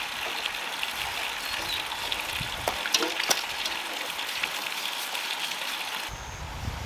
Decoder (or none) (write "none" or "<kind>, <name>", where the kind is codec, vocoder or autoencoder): none